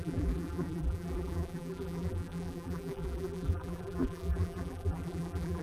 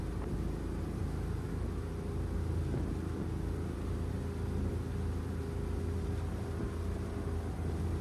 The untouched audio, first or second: second